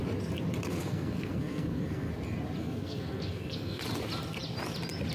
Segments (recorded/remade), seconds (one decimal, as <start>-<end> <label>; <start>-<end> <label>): 0.0-0.7 recorded; 0.7-2.1 remade; 2.1-2.6 recorded; 2.6-3.8 remade; 3.8-5.1 recorded